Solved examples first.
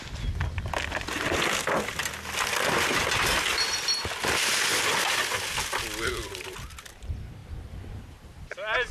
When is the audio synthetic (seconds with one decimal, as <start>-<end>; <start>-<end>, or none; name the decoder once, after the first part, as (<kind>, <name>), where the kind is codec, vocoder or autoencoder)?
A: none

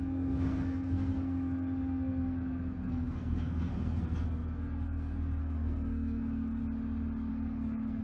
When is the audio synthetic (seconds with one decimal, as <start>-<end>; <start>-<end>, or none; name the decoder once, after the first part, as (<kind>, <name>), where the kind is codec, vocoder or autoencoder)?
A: 0.0-6.6 (codec, SNAC); 7.3-8.0

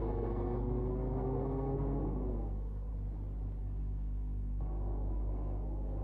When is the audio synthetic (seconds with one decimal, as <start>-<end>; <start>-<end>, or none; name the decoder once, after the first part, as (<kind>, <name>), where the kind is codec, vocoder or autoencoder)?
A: 0.0-2.9 (codec, SNAC); 3.6-6.0

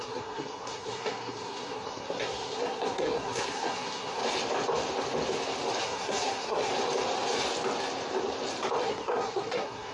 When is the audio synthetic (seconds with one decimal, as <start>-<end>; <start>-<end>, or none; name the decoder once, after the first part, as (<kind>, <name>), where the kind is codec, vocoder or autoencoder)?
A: 0.0-4.2 (codec, SNAC); 5.8-6.7; 8.8-9.9

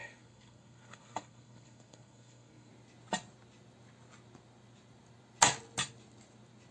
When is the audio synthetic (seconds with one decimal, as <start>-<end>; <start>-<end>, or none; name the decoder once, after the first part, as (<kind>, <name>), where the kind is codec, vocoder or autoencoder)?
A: 0.0-2.7 (codec, SNAC)

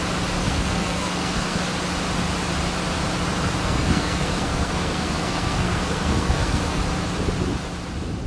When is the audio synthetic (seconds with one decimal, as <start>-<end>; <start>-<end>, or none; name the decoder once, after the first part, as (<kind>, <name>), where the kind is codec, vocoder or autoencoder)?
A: 0.4-1.6 (codec, SNAC); 3.6-6.8

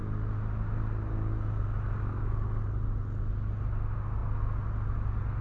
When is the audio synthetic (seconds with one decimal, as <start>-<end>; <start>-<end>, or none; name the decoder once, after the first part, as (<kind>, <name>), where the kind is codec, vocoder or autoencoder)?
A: none

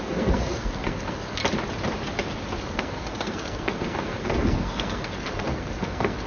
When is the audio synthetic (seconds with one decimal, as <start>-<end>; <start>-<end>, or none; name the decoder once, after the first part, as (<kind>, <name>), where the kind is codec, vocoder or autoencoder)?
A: 0.0-1.4 (codec, SNAC); 2.6-6.3